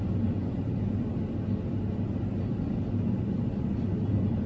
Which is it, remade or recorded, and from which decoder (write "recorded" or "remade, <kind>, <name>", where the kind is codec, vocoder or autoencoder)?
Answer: recorded